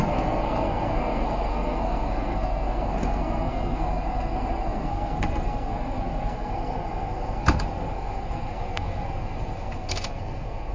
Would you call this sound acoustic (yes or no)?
no